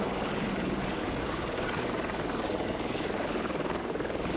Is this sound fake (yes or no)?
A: yes